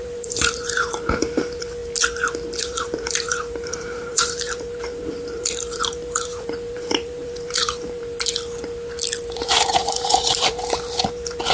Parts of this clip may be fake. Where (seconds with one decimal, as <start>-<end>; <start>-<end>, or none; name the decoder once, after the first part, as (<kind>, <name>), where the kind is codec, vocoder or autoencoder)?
0.0-1.8 (vocoder, BigVGAN v2); 2.6-8.0; 9.3-11.5